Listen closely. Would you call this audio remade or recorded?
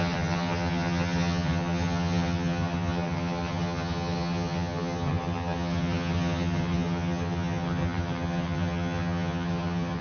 remade